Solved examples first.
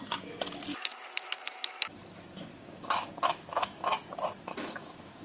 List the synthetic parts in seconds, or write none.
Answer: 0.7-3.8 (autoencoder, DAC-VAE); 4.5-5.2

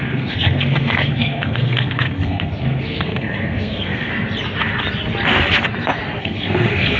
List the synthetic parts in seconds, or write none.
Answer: 0.0-4.1 (codec, SNAC); 6.2-7.0